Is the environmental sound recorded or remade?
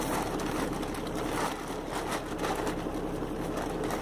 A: recorded